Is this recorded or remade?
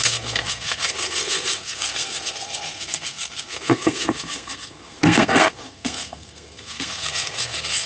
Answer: remade